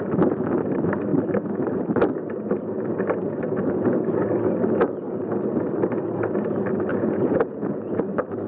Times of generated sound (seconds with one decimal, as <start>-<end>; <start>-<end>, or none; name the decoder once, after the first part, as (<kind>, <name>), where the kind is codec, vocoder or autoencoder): 6.9-8.0 (vocoder, Vocos)